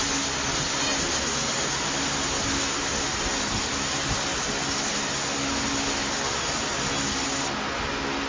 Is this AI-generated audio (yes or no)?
no